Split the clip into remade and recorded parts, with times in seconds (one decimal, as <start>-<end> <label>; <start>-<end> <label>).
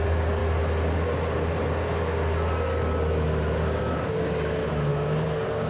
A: 0.0-0.4 remade; 0.4-3.8 recorded; 3.8-5.7 remade